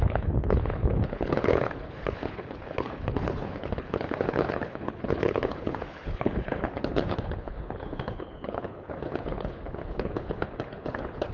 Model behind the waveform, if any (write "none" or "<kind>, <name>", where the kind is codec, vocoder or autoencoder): codec, HILCodec